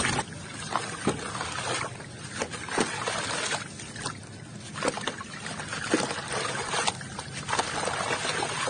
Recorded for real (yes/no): yes